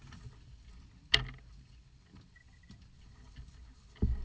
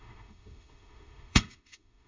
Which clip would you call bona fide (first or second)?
first